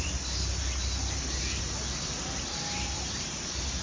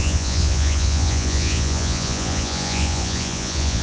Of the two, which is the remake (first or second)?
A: second